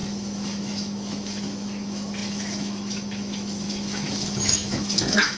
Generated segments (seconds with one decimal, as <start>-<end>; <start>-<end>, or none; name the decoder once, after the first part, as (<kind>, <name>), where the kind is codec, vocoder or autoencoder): 0.0-5.4 (autoencoder, DAC-VAE)